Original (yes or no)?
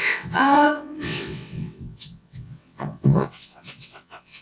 no